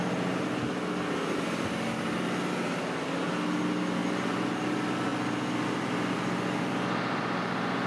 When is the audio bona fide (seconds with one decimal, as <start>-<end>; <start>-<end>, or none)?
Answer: 0.0-7.9